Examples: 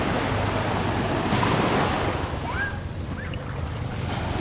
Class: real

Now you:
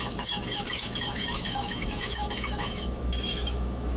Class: fake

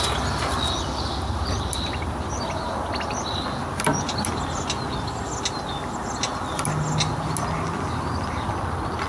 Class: real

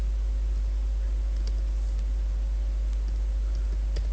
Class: real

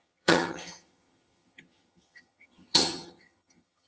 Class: fake